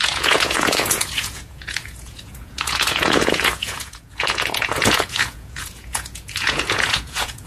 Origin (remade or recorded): remade